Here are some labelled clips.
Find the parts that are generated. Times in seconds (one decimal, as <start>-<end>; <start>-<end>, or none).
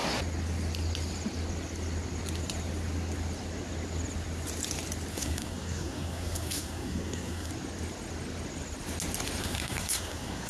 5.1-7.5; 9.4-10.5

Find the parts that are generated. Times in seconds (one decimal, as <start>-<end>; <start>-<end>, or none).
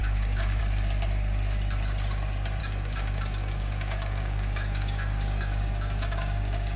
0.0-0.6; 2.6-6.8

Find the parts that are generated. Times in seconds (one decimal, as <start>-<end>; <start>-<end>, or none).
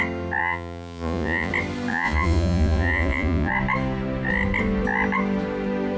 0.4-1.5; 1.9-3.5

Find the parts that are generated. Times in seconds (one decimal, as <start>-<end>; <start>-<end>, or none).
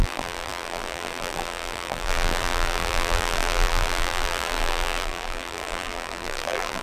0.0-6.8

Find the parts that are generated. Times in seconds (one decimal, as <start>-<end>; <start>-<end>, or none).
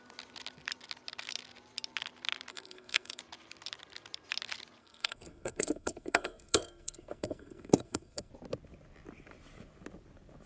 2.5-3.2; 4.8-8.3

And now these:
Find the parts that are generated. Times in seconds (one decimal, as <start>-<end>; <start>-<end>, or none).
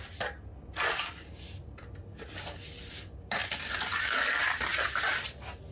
none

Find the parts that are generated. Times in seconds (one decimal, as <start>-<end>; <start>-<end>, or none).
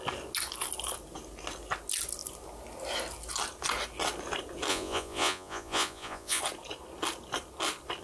4.7-6.4